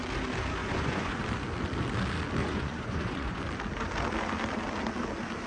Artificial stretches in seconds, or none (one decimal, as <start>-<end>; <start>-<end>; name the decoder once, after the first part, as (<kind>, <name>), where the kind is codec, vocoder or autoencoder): 0.6-1.2 (vocoder, Vocos); 2.4-3.4